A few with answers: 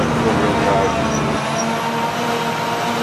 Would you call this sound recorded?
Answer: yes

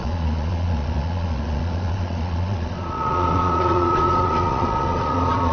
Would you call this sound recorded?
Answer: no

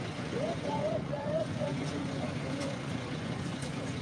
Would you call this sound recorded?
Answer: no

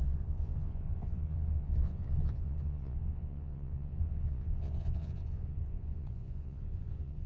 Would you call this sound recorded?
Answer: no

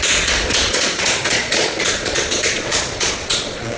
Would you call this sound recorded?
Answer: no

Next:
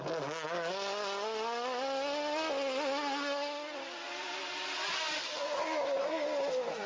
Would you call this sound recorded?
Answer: yes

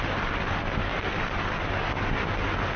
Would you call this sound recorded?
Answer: yes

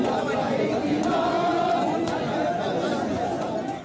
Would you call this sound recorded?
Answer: no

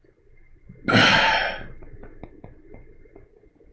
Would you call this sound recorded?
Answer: yes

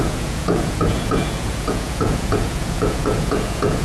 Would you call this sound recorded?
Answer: no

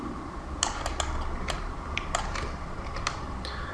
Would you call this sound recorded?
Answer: yes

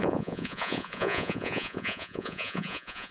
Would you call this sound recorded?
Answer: no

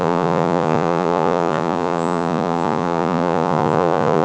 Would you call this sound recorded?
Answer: no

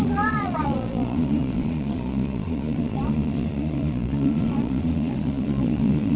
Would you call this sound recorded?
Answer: no